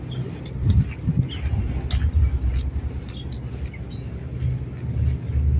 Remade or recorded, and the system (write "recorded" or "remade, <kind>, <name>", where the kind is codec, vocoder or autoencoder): recorded